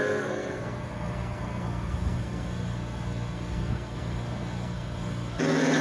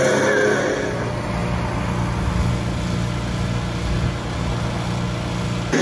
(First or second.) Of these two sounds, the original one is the second